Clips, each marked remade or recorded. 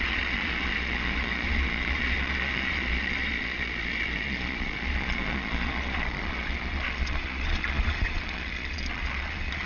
remade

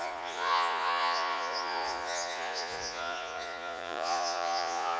remade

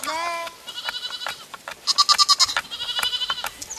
recorded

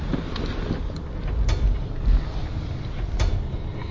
recorded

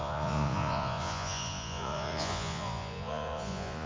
remade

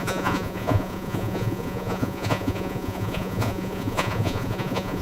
remade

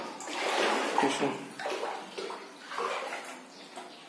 recorded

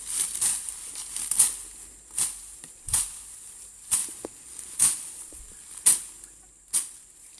recorded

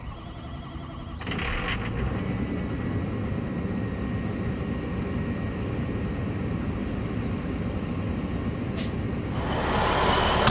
recorded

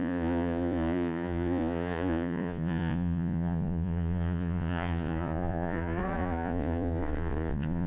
remade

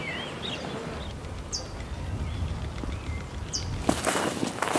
recorded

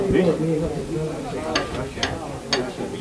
recorded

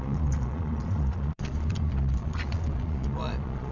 remade